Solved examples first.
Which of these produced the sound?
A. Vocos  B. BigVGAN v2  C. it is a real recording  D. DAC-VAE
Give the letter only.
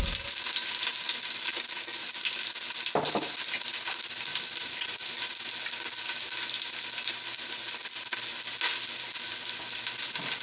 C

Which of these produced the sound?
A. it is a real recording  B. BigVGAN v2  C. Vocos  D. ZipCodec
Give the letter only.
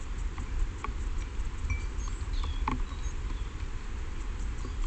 B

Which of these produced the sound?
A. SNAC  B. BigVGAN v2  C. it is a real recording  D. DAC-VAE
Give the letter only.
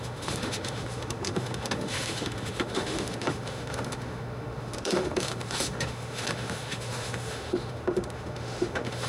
D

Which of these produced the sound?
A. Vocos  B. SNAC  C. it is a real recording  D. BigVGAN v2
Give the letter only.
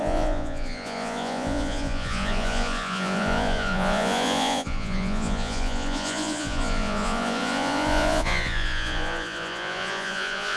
A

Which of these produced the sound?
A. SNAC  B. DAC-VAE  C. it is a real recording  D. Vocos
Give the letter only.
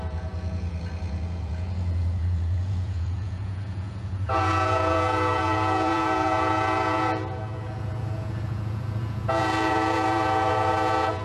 D